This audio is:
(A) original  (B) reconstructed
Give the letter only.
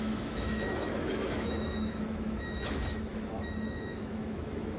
B